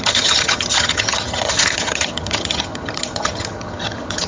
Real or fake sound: fake